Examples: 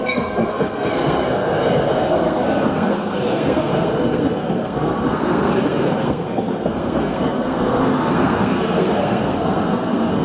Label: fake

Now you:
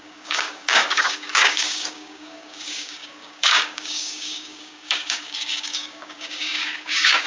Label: fake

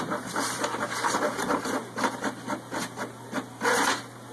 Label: real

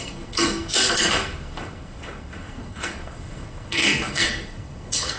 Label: fake